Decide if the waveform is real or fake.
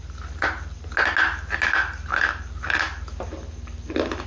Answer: real